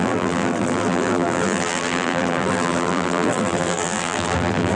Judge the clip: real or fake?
fake